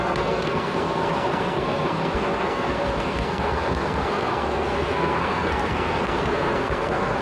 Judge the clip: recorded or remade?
remade